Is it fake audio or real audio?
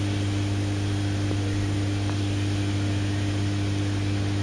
real